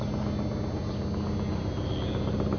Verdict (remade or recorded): recorded